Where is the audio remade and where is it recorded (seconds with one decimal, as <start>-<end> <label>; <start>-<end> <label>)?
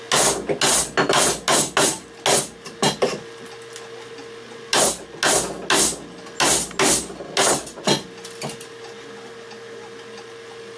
0.0-10.8 recorded